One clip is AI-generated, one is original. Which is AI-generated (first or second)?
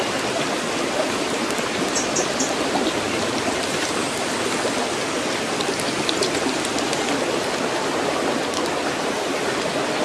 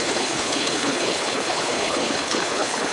second